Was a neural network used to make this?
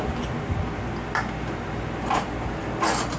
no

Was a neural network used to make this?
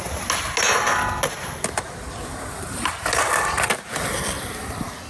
no